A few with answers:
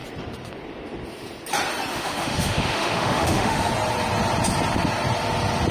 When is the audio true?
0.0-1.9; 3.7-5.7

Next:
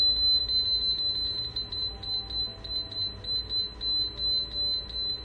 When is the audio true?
0.0-5.2

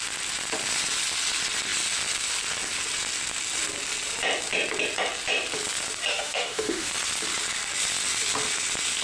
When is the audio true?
0.0-6.1; 6.9-9.0

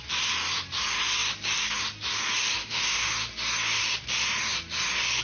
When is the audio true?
0.0-2.6; 3.1-5.2

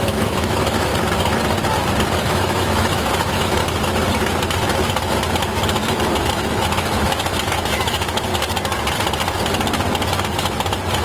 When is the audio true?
0.9-2.2; 3.6-6.2; 8.3-11.0

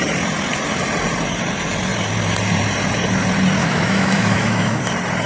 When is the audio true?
0.0-3.6; 4.8-5.3

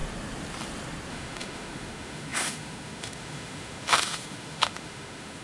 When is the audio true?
0.0-1.1